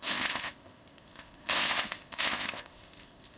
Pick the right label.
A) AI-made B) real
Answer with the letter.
A